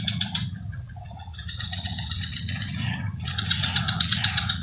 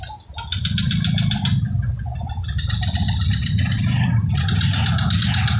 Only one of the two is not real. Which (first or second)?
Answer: first